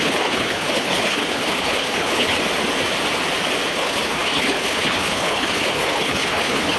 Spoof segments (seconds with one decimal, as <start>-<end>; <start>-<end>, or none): 0.0-2.4; 3.7-6.8